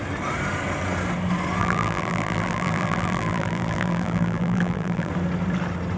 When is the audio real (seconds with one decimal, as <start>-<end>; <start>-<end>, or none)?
0.0-1.6; 5.1-6.0